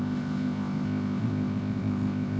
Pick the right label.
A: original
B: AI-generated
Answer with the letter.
B